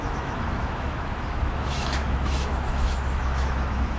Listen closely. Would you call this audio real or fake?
fake